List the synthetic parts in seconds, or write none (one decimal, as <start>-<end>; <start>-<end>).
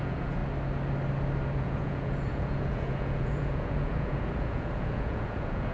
0.0-0.4; 1.6-5.7